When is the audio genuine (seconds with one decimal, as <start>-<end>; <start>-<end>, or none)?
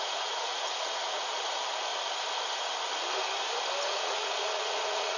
1.9-3.9